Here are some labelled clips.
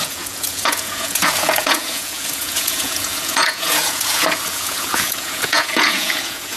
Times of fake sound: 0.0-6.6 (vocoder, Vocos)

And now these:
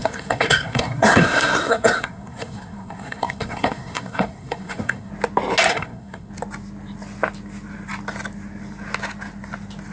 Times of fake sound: 0.0-5.1 (codec, SNAC); 5.7-6.3

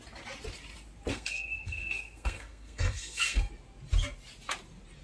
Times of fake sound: 1.1-3.5 (codec, SNAC)

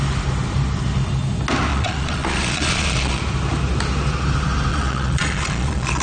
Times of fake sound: 1.7-3.2 (vocoder, Vocos); 4.7-6.0

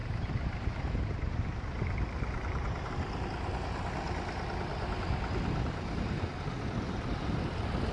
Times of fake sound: 0.0-2.9 (vocoder, BigVGAN v2)

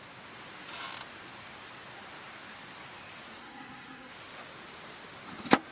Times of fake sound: 3.4-4.1 (codec, SNAC)